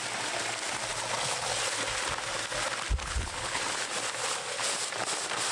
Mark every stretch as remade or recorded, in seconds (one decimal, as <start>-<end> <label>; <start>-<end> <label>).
0.0-3.0 recorded; 3.0-3.6 remade; 3.6-5.5 recorded